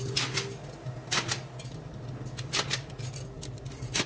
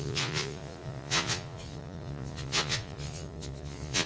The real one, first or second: first